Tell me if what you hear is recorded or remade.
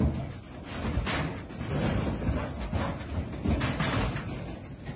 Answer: recorded